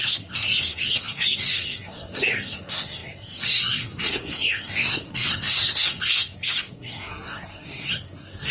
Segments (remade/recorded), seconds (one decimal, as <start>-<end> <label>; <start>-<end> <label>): 0.0-8.5 remade